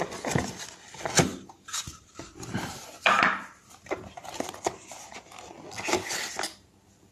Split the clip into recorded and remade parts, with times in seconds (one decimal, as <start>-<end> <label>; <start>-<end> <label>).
0.0-1.3 recorded; 1.3-5.5 remade; 5.5-7.1 recorded